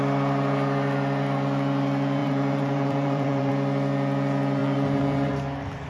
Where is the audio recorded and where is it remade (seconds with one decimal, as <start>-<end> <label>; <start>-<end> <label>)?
0.0-2.2 recorded; 2.2-3.5 remade; 3.5-4.6 recorded; 4.6-5.3 remade; 5.3-5.9 recorded